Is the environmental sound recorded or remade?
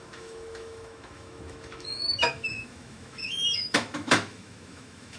remade